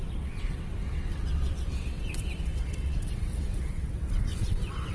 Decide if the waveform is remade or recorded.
remade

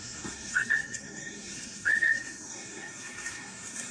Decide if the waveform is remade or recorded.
remade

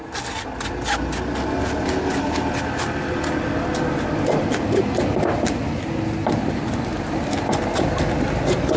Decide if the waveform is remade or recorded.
recorded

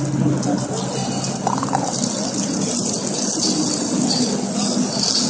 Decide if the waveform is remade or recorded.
recorded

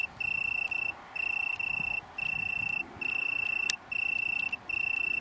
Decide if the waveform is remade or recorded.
recorded